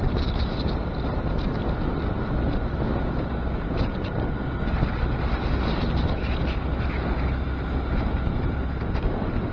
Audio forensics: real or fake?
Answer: real